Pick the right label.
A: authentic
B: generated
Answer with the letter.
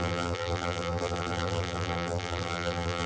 B